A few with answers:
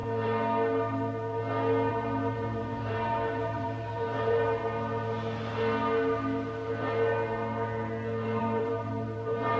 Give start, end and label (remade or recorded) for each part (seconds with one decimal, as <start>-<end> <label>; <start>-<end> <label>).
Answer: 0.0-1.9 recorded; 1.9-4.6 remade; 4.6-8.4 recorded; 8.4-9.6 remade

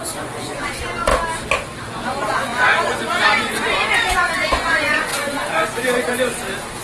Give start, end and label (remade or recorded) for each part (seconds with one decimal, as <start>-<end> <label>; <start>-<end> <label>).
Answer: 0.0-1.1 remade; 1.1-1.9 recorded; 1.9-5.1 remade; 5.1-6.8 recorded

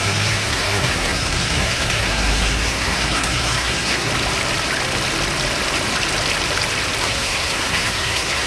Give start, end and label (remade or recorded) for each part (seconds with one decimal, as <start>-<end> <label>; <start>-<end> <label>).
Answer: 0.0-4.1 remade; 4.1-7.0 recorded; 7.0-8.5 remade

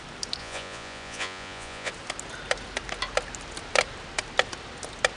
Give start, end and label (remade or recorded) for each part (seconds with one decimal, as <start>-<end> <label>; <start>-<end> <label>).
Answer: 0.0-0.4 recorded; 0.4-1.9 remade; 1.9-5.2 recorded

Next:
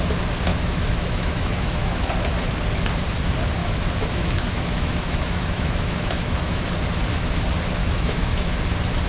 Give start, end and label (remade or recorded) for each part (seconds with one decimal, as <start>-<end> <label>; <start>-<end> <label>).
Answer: 0.0-0.5 recorded; 0.5-2.1 remade; 2.1-3.6 recorded; 3.6-6.7 remade; 6.7-7.8 recorded; 7.8-8.6 remade; 8.6-9.1 recorded

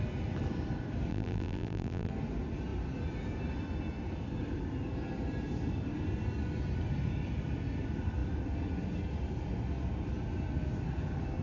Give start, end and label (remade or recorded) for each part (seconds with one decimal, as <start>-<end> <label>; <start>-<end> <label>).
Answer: 0.0-1.1 recorded; 1.1-2.1 remade; 2.1-11.4 recorded

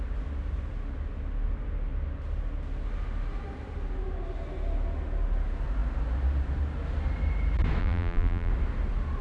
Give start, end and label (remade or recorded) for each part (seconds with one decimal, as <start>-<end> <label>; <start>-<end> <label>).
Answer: 0.0-7.8 recorded; 7.8-8.5 remade; 8.5-9.2 recorded

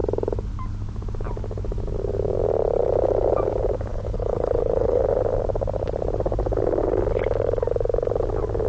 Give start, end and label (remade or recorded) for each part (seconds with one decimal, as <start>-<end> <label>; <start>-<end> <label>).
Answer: 0.0-3.9 recorded; 3.9-5.0 remade; 5.0-8.7 recorded